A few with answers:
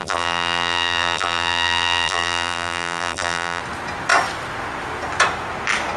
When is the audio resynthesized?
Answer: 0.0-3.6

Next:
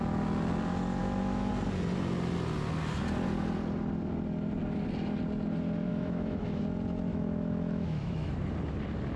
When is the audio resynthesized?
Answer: 1.0-1.5; 5.9-6.6; 7.1-8.3

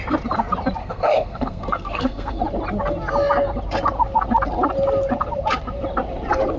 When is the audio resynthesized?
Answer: 0.8-2.4

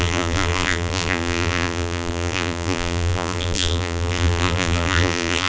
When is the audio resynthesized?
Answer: 0.0-5.5